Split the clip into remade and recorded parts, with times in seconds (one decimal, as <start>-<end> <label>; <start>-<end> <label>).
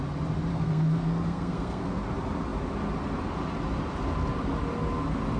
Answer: 0.0-0.5 recorded; 0.5-2.0 remade; 2.0-5.4 recorded